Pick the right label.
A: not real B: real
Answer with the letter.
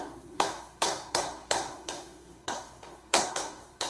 A